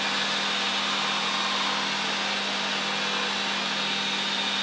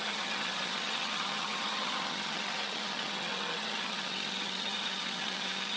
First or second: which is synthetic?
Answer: second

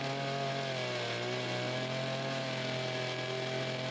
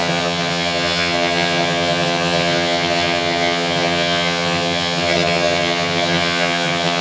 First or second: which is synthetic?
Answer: second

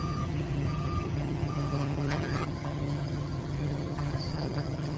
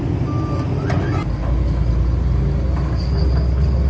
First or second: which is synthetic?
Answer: first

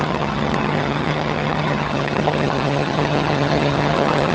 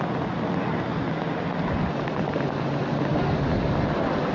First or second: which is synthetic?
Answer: first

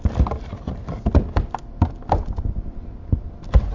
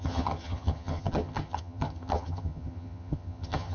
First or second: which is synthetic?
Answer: second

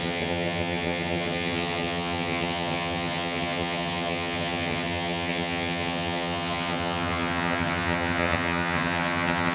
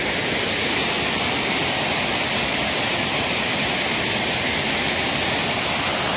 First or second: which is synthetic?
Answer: first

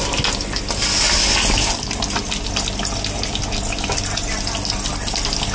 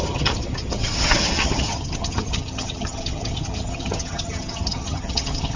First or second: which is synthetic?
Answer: second